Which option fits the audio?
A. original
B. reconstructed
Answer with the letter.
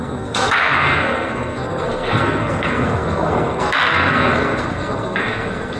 B